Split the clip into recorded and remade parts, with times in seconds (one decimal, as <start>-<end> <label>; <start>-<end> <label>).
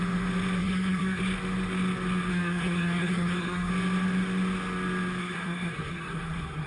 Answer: 0.0-0.6 recorded; 0.6-1.2 remade; 1.2-2.3 recorded; 2.3-3.7 remade; 3.7-5.2 recorded; 5.2-6.7 remade